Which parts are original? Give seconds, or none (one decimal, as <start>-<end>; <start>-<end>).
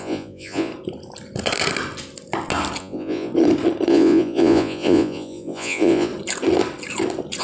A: 0.7-2.8; 3.3-3.9; 6.1-7.4